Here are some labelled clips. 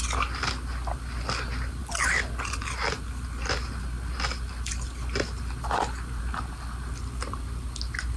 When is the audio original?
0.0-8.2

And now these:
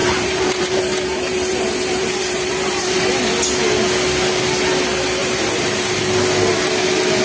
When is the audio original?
3.1-5.2; 6.0-7.2

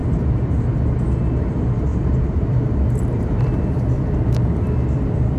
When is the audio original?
0.6-1.9